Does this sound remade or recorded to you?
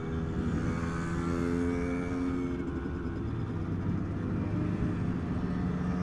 recorded